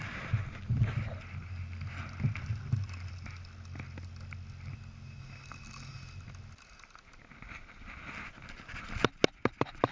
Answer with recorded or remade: recorded